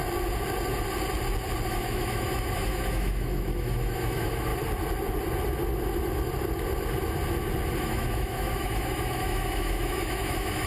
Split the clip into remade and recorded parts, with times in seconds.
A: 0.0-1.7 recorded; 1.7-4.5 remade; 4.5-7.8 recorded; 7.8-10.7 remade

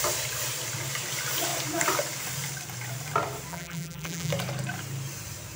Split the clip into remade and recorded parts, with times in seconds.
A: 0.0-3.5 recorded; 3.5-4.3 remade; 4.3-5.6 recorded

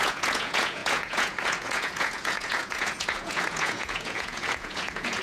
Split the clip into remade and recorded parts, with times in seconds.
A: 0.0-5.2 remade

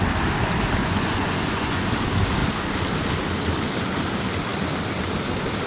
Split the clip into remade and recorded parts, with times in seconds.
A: 0.0-0.8 recorded; 0.8-1.8 remade; 1.8-5.7 recorded

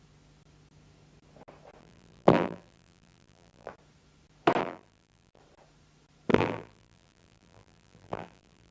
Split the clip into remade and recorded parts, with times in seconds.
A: 0.0-1.8 recorded; 1.8-3.7 remade; 3.7-4.6 recorded; 4.6-5.4 remade; 5.4-6.3 recorded; 6.3-8.7 remade

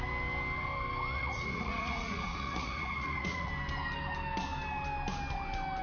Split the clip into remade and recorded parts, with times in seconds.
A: 0.0-1.1 recorded; 1.1-3.5 remade; 3.5-5.8 recorded

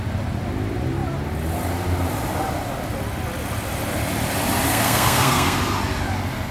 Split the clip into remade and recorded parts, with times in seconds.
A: 0.0-4.7 recorded; 4.7-5.6 remade; 5.6-6.5 recorded